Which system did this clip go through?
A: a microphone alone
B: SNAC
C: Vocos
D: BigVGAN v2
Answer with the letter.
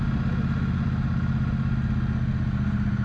A